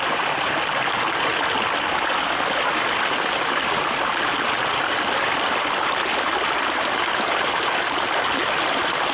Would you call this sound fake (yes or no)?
no